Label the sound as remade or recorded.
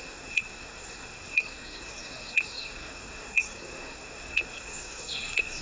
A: remade